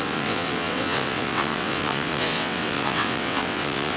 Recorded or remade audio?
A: remade